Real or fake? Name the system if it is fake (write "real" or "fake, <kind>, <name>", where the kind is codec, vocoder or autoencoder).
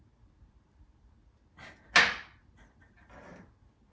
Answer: real